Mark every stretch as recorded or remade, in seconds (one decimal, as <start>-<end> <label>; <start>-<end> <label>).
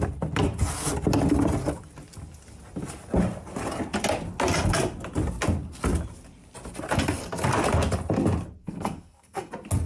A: 0.0-8.6 recorded; 8.6-9.5 remade; 9.5-9.9 recorded